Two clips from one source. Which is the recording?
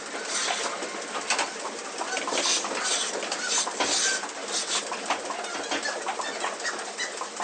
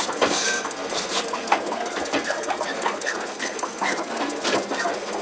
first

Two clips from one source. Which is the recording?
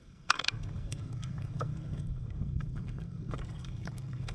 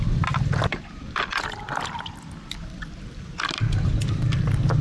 second